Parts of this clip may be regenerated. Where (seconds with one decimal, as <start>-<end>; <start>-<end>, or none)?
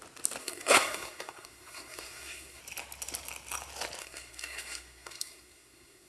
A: 0.4-2.6; 4.0-6.1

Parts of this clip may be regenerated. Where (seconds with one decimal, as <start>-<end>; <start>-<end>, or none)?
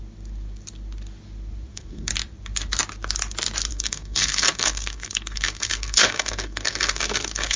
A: 1.7-2.1; 3.7-7.6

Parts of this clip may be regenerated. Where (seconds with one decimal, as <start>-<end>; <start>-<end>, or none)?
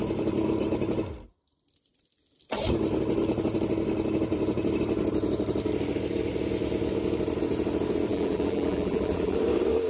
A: 8.1-9.4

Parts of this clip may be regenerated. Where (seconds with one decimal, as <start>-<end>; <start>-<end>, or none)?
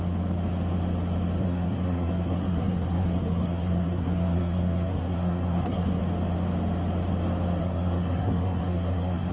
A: 1.4-6.0; 7.6-9.3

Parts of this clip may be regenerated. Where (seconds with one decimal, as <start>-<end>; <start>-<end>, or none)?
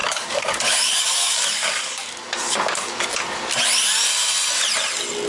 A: 0.0-3.2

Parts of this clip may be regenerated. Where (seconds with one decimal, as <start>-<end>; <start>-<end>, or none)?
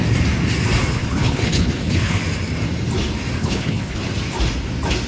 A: 1.0-2.2; 3.4-4.0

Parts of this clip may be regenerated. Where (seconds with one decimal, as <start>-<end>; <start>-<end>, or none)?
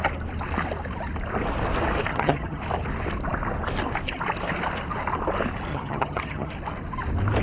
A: 2.1-2.6; 5.7-6.5